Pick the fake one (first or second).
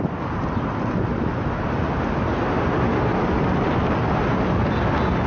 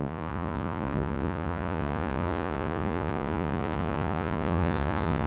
second